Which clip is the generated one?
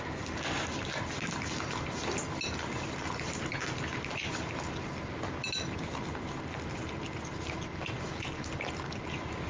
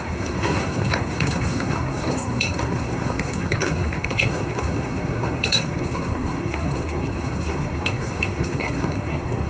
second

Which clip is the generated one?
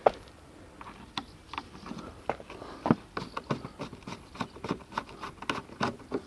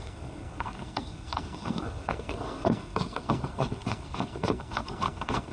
second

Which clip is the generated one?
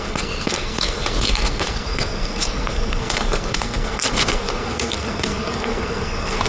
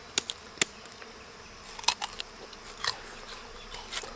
first